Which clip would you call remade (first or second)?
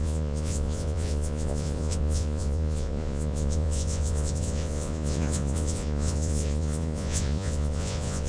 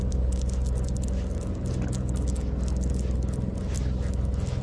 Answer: first